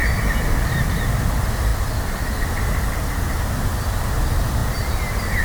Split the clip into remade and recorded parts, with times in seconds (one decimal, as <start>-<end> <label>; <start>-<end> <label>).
0.0-1.1 remade; 1.1-4.6 recorded; 4.6-5.4 remade